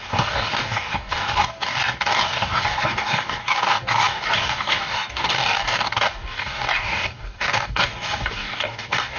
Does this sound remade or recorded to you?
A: remade